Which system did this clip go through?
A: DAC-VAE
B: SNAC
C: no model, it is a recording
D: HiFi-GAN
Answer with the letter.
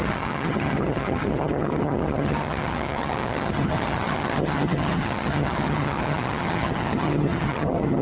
D